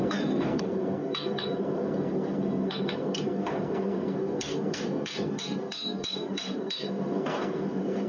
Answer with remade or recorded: remade